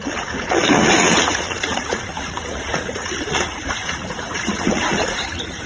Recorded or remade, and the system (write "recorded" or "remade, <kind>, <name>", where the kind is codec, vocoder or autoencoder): remade, vocoder, Vocos